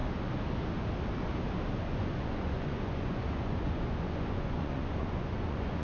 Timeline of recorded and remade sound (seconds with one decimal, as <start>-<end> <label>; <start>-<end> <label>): 0.0-1.7 recorded; 1.7-5.8 remade